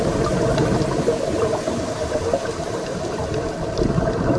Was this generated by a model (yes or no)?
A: yes